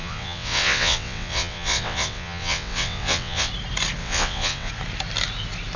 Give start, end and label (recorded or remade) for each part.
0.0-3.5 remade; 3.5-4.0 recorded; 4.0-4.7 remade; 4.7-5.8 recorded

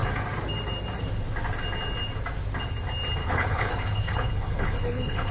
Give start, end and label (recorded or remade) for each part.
0.0-3.2 recorded; 3.2-5.3 remade